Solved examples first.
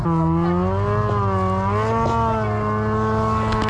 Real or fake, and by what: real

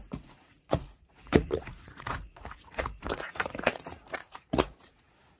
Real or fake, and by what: fake, vocoder, Vocos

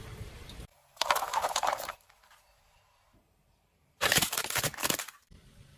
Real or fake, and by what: fake, vocoder, BigVGAN v2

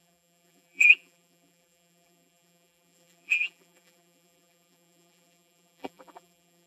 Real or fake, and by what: fake, vocoder, BigVGAN v2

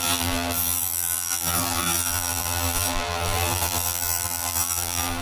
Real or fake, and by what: fake, vocoder, BigVGAN v2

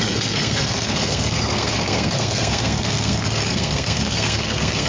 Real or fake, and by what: fake, codec, SNAC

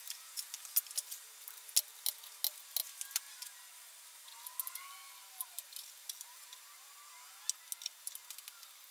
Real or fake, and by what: real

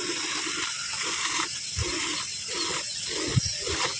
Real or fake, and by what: real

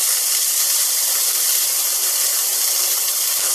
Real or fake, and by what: real